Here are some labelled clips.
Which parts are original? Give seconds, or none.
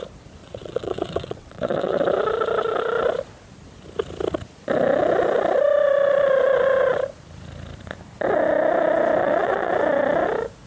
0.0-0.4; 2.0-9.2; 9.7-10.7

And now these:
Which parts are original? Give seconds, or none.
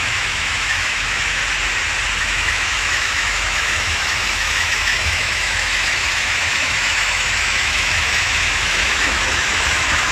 1.4-2.2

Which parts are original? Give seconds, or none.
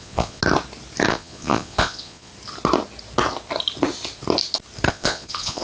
0.4-1.1; 2.3-4.9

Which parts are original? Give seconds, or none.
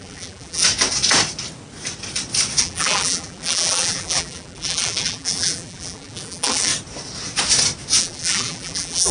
0.6-2.6; 6.7-8.0